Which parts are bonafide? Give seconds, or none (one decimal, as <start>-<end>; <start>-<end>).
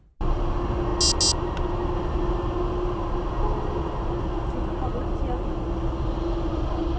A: 0.0-7.0